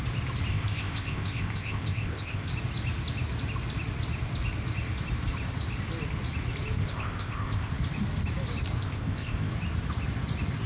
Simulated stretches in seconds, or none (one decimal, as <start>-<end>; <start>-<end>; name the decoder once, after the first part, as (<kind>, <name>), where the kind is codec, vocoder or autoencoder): 0.5-2.5 (codec, ZipCodec); 6.8-7.7; 8.8-9.5